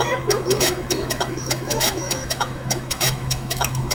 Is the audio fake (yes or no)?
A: yes